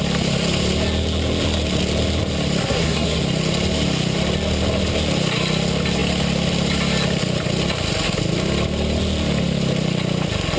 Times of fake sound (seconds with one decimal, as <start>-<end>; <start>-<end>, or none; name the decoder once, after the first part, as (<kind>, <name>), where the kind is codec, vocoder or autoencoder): 2.6-3.2 (codec, SNAC)